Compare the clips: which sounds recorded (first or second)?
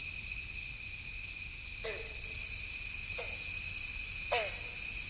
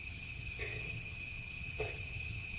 first